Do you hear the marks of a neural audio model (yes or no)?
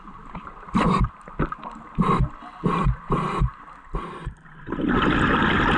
yes